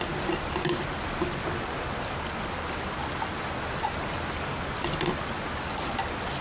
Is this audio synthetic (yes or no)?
no